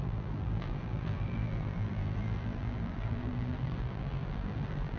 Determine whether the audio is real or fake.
fake